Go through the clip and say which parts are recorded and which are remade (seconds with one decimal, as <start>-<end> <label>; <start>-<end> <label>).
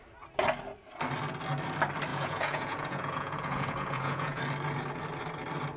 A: 0.0-2.1 recorded; 2.1-4.4 remade; 4.4-5.8 recorded